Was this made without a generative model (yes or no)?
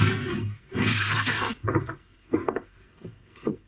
no